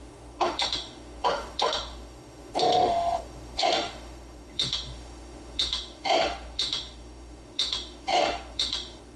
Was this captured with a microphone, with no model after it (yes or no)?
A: no